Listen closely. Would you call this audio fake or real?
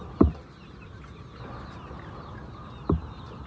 real